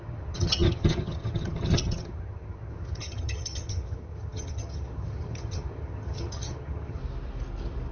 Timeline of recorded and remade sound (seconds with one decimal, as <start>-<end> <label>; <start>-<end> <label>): 0.0-7.0 remade; 7.0-7.9 recorded